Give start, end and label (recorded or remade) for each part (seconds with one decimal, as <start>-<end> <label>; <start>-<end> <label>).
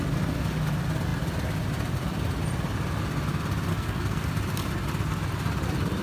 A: 0.0-3.7 recorded; 3.7-4.3 remade; 4.3-6.0 recorded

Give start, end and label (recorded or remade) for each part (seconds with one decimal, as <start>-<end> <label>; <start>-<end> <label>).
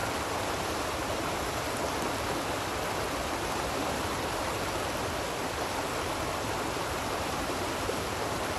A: 0.0-8.6 recorded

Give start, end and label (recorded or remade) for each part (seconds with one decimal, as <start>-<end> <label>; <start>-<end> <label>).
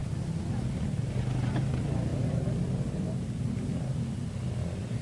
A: 0.0-5.0 recorded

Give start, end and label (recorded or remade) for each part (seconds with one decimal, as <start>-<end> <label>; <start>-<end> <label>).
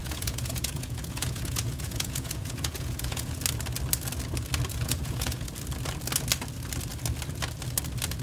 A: 0.0-3.4 remade; 3.4-4.7 recorded; 4.7-5.5 remade; 5.5-8.2 recorded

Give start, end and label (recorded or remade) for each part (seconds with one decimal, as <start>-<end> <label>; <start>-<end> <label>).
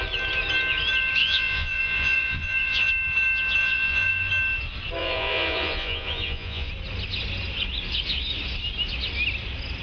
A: 0.0-1.2 recorded; 1.2-2.9 remade; 2.9-3.6 recorded; 3.6-4.3 remade; 4.3-5.0 recorded; 5.0-6.7 remade; 6.7-9.8 recorded